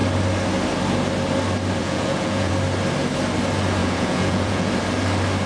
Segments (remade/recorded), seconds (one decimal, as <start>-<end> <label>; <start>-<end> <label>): 0.0-1.8 recorded; 1.8-2.5 remade; 2.5-3.8 recorded; 3.8-4.7 remade; 4.7-5.5 recorded